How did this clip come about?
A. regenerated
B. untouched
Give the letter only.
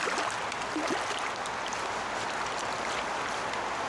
B